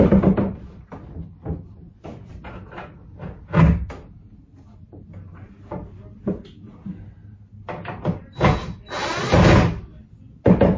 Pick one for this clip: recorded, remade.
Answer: recorded